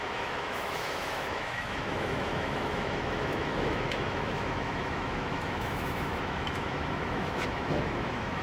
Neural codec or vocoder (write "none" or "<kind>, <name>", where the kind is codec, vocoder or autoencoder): autoencoder, DAC-VAE